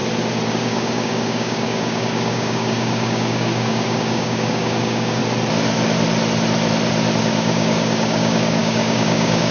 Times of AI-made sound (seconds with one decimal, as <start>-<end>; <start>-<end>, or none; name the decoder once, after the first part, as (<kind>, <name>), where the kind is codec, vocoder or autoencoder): 0.5-5.2 (codec, DAC); 7.2-9.5